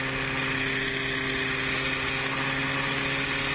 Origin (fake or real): real